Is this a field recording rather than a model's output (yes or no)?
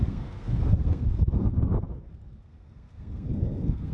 no